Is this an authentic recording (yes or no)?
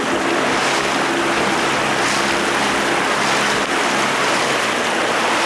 yes